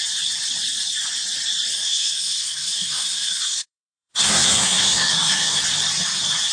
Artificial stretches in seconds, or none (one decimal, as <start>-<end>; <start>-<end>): 1.7-5.6